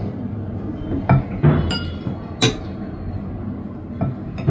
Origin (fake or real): real